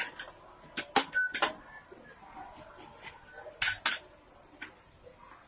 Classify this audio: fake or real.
real